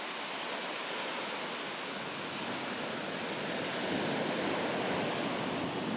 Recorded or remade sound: recorded